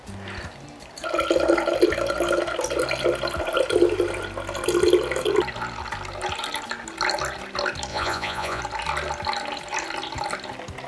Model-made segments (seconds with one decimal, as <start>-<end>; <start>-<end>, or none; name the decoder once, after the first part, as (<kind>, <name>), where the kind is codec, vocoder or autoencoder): 7.9-8.6 (vocoder, Vocos)

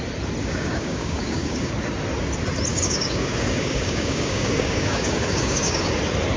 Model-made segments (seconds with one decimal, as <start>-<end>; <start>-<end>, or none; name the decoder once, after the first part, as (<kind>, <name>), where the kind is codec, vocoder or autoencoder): 0.4-1.7 (codec, DAC); 2.7-5.9

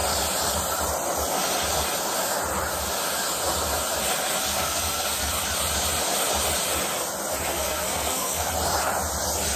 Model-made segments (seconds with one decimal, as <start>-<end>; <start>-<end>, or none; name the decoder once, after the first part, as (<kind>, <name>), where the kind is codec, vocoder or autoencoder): 4.5-5.3 (codec, SNAC); 7.5-8.5

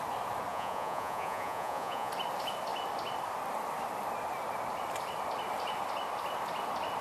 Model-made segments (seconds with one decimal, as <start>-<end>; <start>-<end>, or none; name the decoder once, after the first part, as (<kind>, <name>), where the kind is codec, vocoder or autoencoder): 0.5-2.1 (vocoder, Vocos)